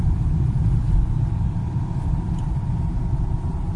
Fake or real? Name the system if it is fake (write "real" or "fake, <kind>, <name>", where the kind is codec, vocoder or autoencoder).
fake, vocoder, BigVGAN v2